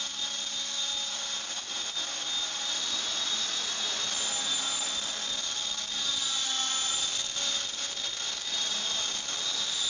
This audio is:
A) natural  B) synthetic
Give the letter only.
A